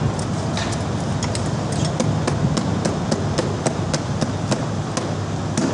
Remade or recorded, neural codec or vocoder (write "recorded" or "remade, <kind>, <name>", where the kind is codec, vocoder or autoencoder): recorded